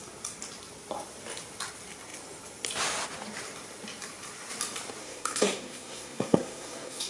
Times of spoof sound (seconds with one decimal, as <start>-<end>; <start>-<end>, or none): 5.0-7.1